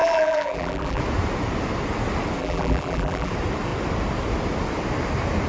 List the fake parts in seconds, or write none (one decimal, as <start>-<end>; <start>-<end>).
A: 0.0-1.0; 2.4-3.3

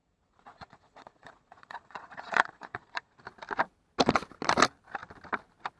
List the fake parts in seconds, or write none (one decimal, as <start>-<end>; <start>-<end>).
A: 0.0-3.2

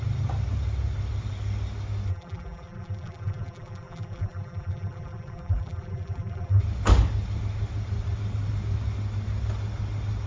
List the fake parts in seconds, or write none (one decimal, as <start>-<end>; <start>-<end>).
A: 2.1-6.6

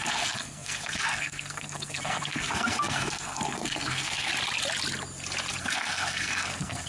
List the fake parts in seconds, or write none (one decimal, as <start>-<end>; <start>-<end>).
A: 0.0-4.3; 5.6-6.9

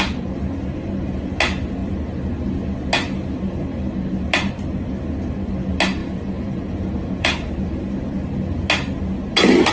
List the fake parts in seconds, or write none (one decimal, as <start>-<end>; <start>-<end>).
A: 6.0-8.1

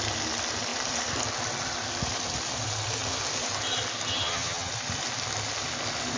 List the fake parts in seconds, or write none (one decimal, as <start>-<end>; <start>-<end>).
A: 4.1-4.7

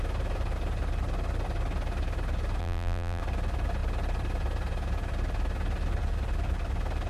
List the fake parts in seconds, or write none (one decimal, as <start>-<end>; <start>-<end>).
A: 2.6-3.2